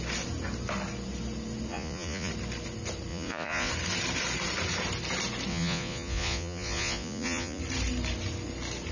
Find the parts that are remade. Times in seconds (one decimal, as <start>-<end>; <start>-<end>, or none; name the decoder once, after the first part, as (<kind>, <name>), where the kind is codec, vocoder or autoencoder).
1.7-2.3 (vocoder, Vocos); 3.1-3.7; 5.5-7.6